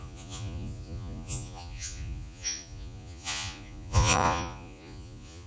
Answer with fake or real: fake